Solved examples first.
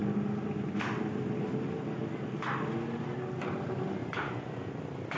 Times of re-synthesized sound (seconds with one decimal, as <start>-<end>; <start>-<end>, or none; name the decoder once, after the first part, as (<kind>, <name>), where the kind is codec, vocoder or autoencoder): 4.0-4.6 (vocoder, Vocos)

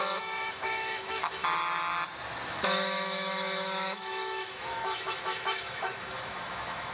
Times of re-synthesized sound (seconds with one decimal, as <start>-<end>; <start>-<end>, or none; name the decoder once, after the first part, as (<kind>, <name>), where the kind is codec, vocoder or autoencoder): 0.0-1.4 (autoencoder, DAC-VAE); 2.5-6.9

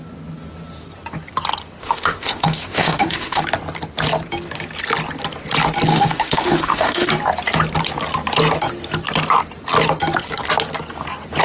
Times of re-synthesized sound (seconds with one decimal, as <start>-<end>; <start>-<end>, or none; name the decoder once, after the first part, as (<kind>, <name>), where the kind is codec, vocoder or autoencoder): 1.8-3.4 (autoencoder, DAC-VAE); 5.9-7.1